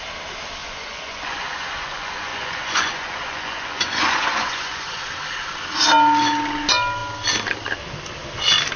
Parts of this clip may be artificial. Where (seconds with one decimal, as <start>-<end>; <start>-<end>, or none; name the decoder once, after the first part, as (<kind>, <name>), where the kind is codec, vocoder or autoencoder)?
0.6-5.0 (vocoder, Vocos)